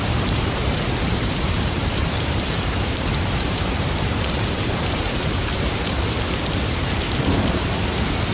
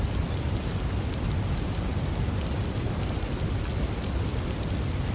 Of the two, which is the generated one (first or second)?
first